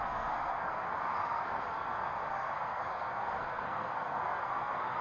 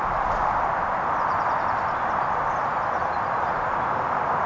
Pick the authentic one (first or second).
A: second